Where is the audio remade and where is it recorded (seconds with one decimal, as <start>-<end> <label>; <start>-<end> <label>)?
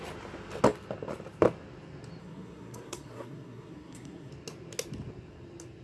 0.0-2.2 recorded; 2.2-4.3 remade; 4.3-5.8 recorded